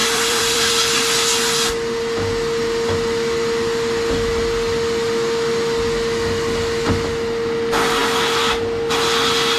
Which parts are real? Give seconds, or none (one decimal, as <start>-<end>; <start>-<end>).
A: 0.7-9.6